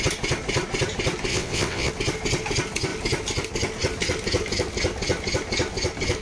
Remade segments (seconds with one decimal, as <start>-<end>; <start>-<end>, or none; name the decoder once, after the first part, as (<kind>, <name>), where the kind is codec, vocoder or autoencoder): 1.3-1.9 (vocoder, WaveNeXt)